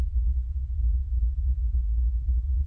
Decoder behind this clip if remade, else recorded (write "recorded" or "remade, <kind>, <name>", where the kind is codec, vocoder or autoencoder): recorded